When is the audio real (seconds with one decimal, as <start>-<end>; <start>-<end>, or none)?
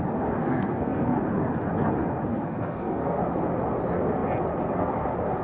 0.0-0.4; 1.2-2.3; 3.2-5.4